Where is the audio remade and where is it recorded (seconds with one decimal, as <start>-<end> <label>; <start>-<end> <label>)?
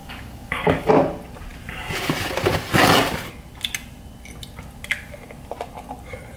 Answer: 0.0-0.9 remade; 0.9-6.4 recorded